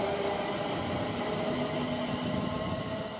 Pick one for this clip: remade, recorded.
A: recorded